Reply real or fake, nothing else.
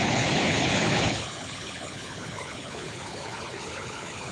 fake